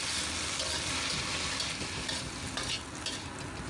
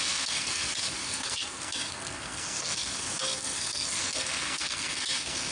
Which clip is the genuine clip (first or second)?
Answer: first